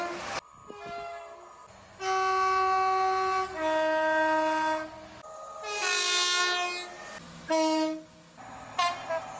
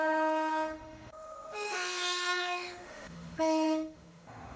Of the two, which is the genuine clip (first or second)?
first